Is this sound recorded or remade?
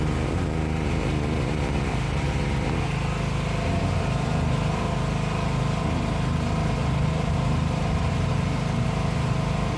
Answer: recorded